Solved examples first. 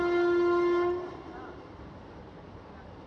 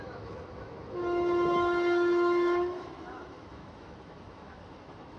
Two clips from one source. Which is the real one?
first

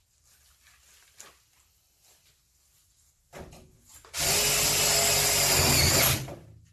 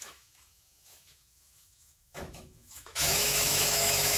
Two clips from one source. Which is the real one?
first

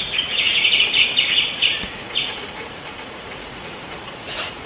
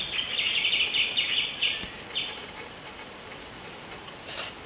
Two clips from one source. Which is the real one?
second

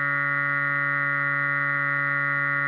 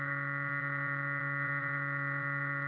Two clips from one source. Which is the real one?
first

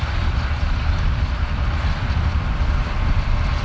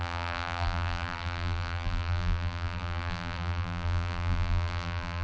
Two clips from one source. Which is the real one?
first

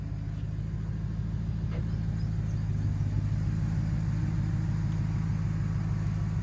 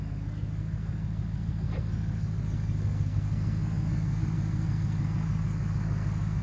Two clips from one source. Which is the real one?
first